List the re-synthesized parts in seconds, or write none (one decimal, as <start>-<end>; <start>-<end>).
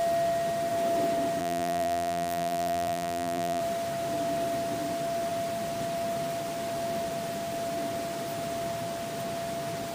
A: 1.4-3.6